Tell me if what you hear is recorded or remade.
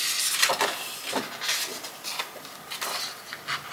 recorded